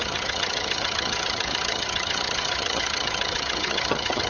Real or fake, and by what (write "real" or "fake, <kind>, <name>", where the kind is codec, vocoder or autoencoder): fake, vocoder, HiFi-GAN